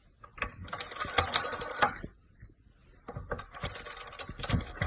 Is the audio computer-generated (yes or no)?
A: no